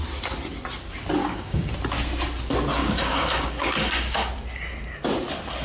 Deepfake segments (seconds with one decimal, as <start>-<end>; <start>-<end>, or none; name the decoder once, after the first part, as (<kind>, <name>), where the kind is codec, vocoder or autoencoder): 1.2-1.7 (codec, DAC); 2.8-4.3